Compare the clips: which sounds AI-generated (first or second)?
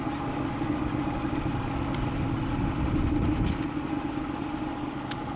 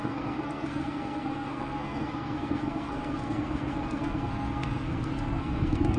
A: second